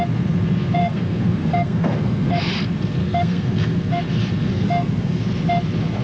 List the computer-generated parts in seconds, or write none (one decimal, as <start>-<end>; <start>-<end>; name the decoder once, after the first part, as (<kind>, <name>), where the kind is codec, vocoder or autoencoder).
0.8-2.5 (codec, SNAC); 3.0-4.0; 4.5-5.2